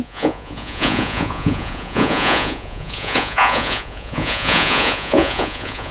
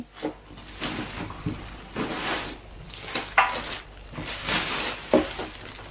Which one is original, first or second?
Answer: second